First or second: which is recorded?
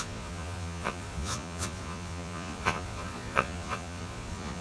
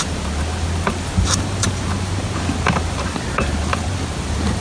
second